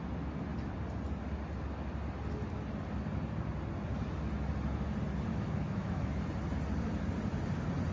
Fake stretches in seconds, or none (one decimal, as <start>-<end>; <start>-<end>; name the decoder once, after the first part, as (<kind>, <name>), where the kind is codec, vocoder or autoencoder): 5.3-6.2 (autoencoder, DAC-VAE)